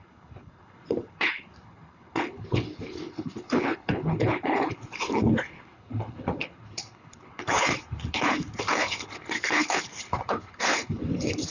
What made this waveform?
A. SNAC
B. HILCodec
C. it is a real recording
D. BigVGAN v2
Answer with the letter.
B